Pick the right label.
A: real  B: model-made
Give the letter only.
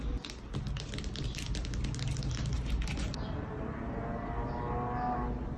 A